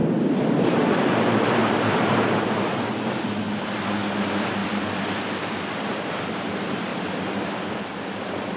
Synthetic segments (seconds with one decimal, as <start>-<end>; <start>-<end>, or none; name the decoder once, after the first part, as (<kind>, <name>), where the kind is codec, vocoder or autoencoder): 0.0-0.9 (vocoder, BigVGAN v2); 1.6-2.3; 4.6-6.5; 6.9-7.8

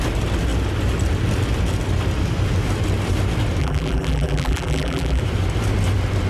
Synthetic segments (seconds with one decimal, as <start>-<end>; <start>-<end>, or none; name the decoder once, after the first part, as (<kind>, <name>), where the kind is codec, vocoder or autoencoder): 3.6-5.2 (vocoder, BigVGAN v2)

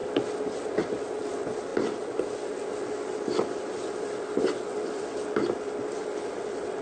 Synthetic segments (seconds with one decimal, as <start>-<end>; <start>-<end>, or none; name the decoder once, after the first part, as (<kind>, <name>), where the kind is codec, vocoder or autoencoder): none

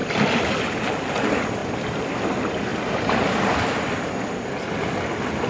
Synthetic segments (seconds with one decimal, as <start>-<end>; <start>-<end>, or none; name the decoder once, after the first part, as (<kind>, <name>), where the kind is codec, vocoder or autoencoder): 0.0-0.6 (vocoder, BigVGAN v2); 2.7-3.5

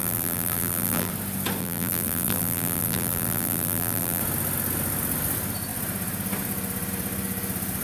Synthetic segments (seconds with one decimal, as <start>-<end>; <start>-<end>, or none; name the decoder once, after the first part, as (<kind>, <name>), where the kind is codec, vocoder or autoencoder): 0.0-1.1 (vocoder, BigVGAN v2); 1.6-4.2